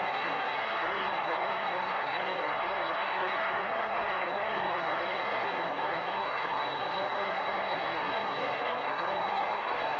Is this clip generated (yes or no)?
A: yes